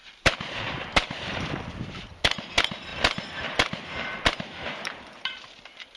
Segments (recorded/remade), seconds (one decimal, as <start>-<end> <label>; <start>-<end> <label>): 0.0-1.5 remade; 1.5-2.9 recorded; 2.9-6.0 remade